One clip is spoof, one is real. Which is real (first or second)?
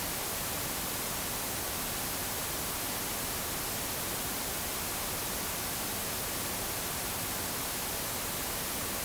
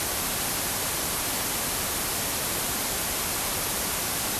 first